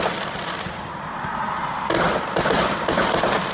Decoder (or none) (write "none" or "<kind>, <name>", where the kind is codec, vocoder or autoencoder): none